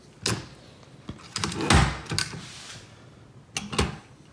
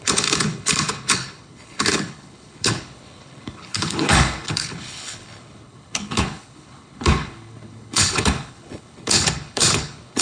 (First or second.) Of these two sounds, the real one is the first